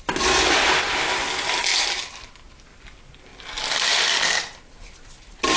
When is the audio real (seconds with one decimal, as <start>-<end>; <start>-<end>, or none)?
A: 0.0-5.6